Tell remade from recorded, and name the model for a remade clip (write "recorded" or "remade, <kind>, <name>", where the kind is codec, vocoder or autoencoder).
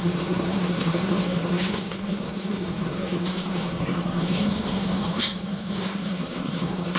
remade, codec, SNAC